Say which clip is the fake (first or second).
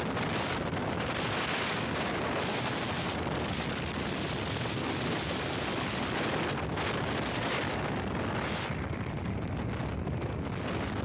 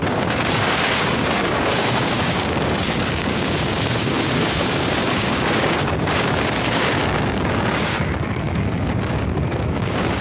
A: second